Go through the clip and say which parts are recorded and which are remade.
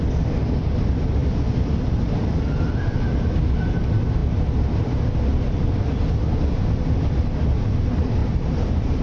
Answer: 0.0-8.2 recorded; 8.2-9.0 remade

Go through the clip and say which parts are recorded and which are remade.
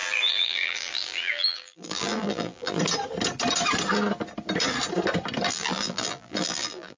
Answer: 0.0-2.8 remade; 2.8-5.5 recorded; 5.5-7.0 remade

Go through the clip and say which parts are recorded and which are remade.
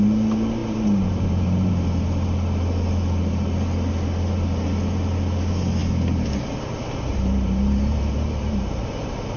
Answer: 0.0-0.6 recorded; 0.6-1.7 remade; 1.7-7.1 recorded; 7.1-9.4 remade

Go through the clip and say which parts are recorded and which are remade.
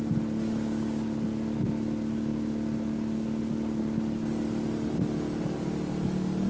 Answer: 0.0-6.5 recorded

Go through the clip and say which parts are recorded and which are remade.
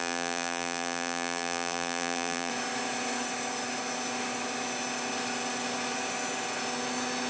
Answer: 0.0-2.5 remade; 2.5-7.3 recorded